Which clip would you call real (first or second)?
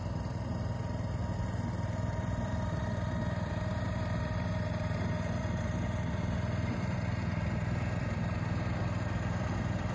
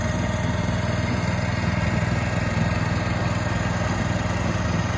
second